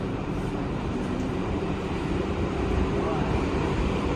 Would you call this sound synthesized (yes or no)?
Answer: yes